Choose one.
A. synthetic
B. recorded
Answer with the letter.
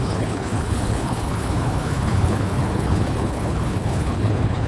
A